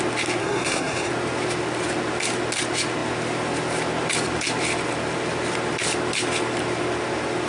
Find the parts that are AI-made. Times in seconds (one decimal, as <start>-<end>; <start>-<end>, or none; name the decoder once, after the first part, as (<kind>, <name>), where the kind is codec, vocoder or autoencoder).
0.4-1.1 (codec, SNAC)